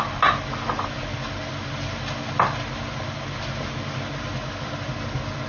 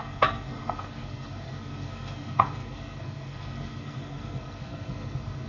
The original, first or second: first